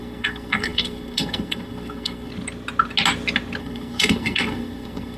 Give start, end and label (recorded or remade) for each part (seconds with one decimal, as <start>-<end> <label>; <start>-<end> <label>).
0.0-2.3 remade; 2.3-3.6 recorded; 3.6-5.2 remade